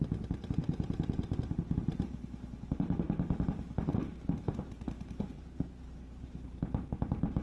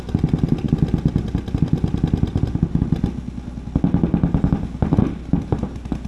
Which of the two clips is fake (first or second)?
first